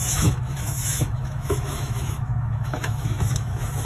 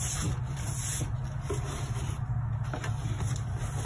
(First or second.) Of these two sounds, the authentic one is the second